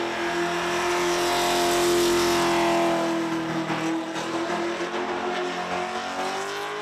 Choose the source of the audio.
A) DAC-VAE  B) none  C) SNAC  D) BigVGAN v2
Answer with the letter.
B